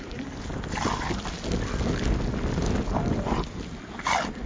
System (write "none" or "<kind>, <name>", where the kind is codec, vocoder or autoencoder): none